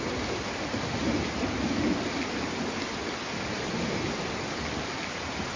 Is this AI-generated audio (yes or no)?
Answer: no